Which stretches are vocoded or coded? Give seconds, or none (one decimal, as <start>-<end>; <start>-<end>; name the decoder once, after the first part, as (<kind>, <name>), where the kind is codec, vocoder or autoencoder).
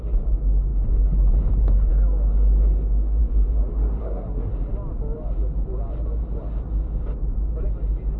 4.0-4.5 (codec, SNAC)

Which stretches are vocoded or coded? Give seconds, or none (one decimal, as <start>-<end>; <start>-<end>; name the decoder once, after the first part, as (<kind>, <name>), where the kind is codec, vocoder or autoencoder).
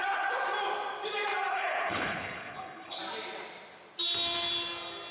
1.5-3.0 (codec, HILCodec)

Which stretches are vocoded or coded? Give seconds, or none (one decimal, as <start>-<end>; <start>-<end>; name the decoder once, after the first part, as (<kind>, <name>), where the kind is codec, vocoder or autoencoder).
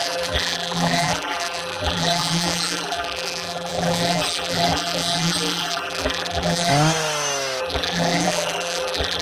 0.0-6.7 (vocoder, BigVGAN v2); 7.6-9.2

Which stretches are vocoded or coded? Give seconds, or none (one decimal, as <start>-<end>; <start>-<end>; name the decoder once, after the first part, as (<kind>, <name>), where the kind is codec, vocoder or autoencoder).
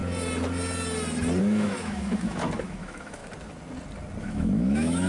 1.4-3.2 (autoencoder, DAC-VAE); 4.2-5.1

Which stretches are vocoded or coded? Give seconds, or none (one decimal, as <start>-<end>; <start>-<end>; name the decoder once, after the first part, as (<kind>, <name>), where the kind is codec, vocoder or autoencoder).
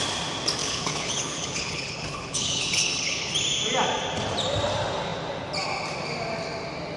0.6-3.3 (codec, HILCodec)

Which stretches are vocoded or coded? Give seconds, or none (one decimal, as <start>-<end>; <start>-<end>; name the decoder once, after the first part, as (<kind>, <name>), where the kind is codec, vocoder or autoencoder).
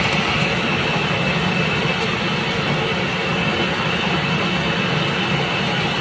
none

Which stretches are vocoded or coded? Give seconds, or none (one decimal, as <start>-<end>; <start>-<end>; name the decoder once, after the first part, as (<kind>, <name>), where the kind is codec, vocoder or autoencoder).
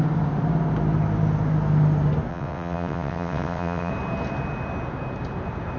2.3-3.9 (vocoder, WaveNeXt)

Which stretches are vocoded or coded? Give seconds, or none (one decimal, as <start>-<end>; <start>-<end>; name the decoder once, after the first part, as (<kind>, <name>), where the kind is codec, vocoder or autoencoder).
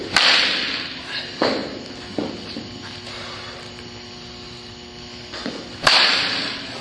none